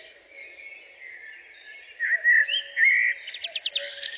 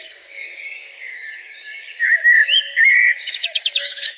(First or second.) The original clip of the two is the first